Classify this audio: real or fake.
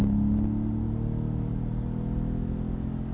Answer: real